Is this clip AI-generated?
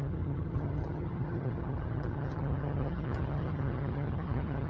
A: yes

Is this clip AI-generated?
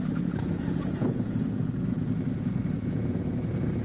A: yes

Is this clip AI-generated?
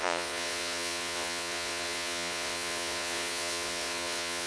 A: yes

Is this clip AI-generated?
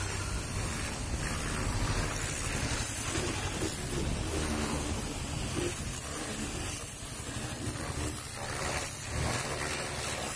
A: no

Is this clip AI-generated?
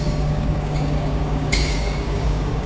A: yes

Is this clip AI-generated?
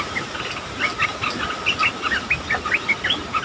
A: no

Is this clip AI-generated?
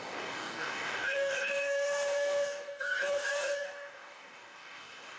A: yes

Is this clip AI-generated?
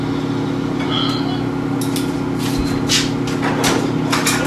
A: no